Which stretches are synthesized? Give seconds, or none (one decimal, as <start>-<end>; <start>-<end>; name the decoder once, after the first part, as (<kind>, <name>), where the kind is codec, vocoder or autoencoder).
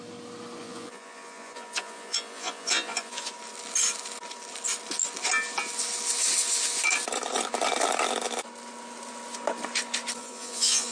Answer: 0.6-3.3 (vocoder, Vocos); 10.2-10.9